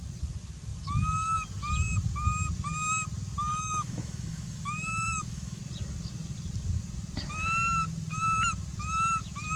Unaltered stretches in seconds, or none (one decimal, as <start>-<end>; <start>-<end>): 0.0-3.5; 5.6-9.6